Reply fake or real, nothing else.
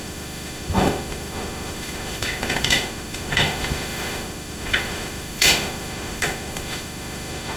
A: fake